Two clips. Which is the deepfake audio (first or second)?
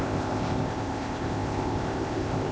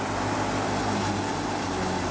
first